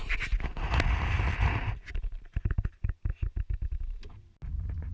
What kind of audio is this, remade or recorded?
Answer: recorded